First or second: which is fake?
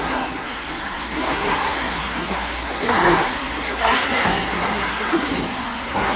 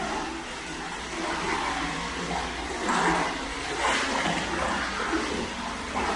first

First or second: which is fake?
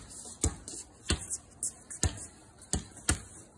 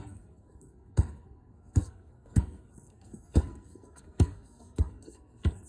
second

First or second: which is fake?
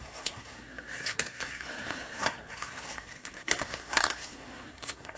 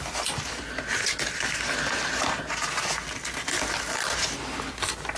first